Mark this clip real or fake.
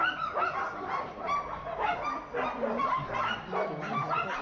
real